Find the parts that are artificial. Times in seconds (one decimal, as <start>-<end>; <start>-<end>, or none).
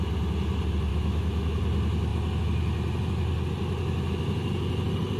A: 0.9-1.6